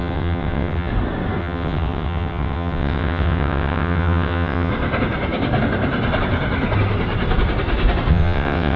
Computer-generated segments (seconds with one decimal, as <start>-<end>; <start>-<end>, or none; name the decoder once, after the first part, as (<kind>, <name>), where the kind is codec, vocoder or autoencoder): 0.0-0.9 (vocoder, WaveNeXt); 1.4-4.7; 8.1-8.8